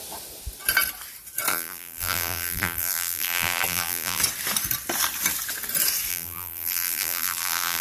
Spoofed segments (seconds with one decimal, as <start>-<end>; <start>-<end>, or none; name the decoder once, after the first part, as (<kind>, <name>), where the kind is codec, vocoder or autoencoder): 1.5-4.2 (vocoder, BigVGAN v2); 6.1-7.8